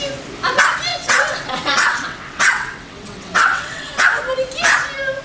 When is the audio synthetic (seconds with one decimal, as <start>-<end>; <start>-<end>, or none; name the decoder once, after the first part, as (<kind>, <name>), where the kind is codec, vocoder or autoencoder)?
0.9-4.0 (vocoder, WaveNeXt)